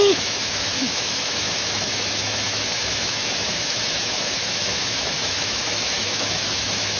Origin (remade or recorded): remade